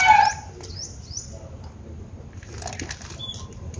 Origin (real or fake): real